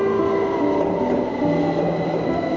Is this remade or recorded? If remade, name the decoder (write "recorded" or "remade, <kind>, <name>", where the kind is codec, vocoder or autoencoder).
recorded